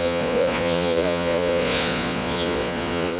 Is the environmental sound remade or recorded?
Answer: remade